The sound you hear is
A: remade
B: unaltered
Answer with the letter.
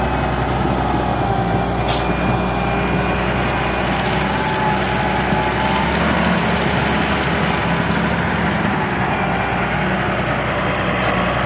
B